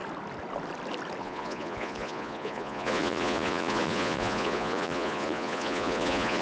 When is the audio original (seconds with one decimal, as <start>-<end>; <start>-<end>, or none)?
0.0-1.2